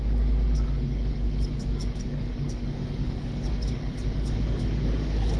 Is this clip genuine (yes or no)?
no